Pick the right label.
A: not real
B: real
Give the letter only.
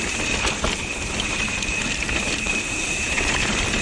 A